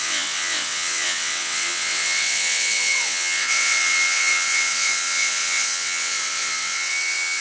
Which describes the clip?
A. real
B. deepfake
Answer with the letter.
B